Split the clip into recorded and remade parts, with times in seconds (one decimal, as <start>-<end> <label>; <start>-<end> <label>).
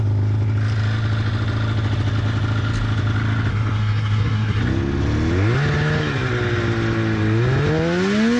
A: 0.0-3.5 recorded; 3.5-4.6 remade; 4.6-8.4 recorded